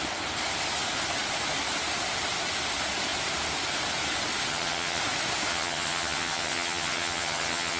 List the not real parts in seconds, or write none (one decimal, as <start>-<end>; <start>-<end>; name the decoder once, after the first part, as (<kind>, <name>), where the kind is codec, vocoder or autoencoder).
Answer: 4.5-5.0 (vocoder, HiFi-GAN); 5.5-7.8